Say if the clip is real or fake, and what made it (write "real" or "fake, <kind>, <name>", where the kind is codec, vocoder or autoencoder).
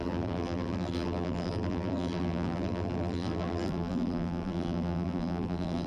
fake, vocoder, BigVGAN v2